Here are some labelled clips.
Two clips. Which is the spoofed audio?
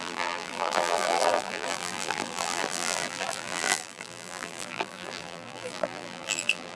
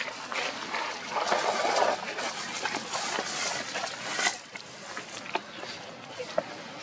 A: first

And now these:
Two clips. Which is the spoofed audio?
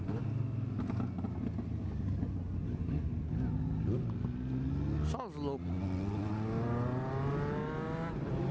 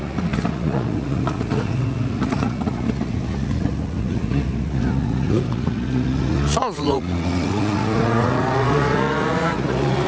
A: second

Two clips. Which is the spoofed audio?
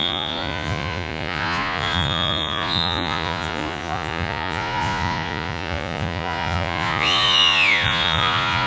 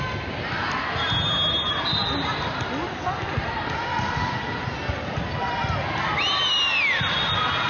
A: first